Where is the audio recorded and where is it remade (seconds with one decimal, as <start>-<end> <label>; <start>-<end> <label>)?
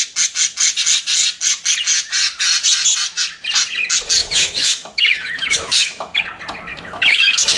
0.0-4.2 recorded; 4.2-6.2 remade; 6.2-6.7 recorded; 6.7-7.6 remade